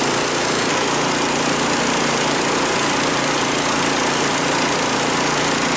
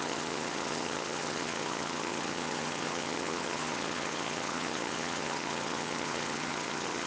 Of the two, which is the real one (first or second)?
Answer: first